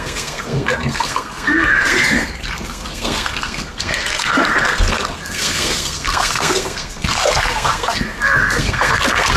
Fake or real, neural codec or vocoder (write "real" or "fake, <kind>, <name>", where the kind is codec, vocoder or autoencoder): fake, codec, SNAC